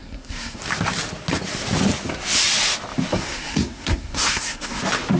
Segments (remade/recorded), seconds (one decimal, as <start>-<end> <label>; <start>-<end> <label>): 0.0-0.6 remade; 0.6-3.1 recorded; 3.1-4.8 remade; 4.8-5.2 recorded